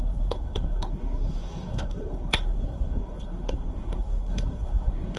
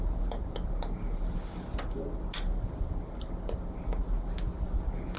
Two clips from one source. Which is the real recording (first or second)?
second